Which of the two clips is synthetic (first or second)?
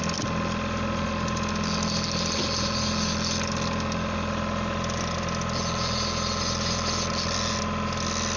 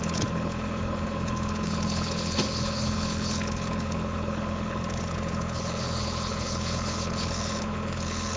second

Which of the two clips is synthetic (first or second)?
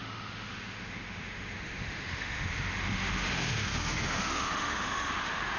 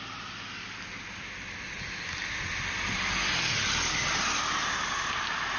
first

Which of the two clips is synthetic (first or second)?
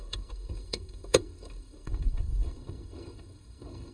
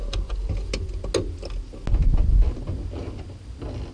first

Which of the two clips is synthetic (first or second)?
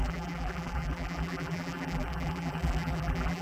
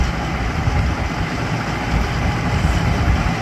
first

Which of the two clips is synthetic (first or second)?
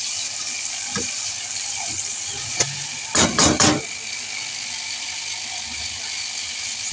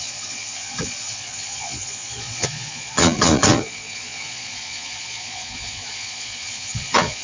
second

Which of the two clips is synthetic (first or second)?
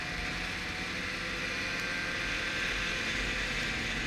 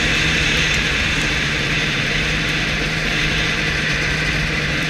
second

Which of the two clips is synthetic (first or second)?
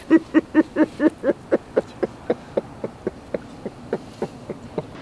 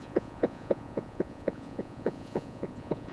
second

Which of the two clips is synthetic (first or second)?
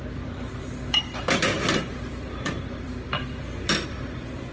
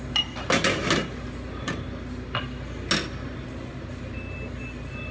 first